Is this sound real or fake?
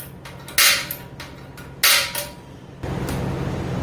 real